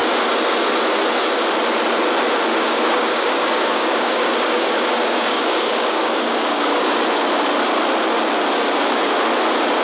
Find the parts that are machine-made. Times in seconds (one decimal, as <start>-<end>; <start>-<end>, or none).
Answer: 2.5-7.0